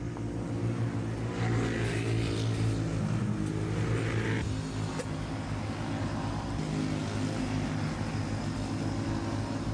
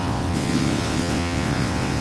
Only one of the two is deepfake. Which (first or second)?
second